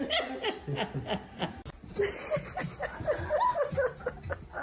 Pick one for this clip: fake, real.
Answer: real